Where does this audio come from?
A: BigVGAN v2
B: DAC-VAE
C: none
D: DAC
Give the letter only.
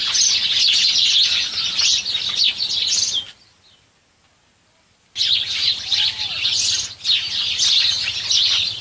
C